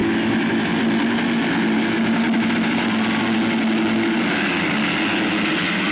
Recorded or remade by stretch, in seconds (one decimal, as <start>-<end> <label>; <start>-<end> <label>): 0.0-5.9 recorded

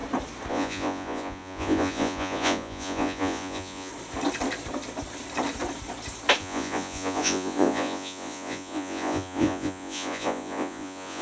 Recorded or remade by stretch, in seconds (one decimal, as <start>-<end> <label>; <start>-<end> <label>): 0.0-0.5 recorded; 0.5-3.9 remade; 3.9-6.4 recorded; 6.4-11.2 remade

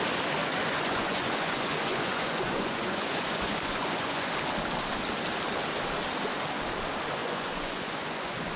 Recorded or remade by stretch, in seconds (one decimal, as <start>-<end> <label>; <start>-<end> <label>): 0.0-0.4 recorded; 0.4-4.3 remade; 4.3-7.2 recorded; 7.2-8.6 remade

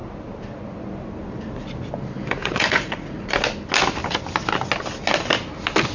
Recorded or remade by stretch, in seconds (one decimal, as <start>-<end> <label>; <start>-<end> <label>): 0.0-2.4 recorded; 2.4-3.3 remade; 3.3-5.9 recorded

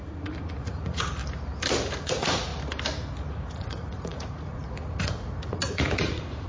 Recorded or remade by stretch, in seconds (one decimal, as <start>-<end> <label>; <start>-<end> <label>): 0.0-1.2 remade; 1.2-2.0 recorded; 2.0-2.5 remade; 2.5-3.3 recorded; 3.3-6.5 remade

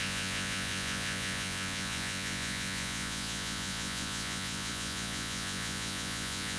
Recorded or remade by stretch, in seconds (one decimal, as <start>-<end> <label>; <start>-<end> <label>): 0.0-6.6 remade

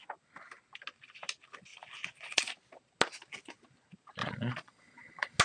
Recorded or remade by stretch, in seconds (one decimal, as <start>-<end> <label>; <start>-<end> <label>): 0.0-4.2 recorded; 4.2-5.4 remade

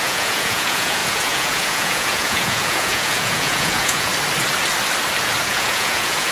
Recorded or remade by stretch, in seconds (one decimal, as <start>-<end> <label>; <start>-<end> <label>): 0.0-4.1 remade; 4.1-5.5 recorded; 5.5-6.3 remade